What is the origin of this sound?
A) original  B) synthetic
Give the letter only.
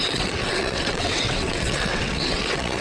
B